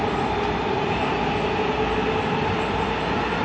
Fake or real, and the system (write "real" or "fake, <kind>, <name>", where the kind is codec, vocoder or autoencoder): real